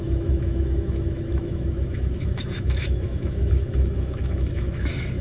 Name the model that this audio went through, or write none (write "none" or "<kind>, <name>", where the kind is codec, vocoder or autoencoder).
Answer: autoencoder, DAC-VAE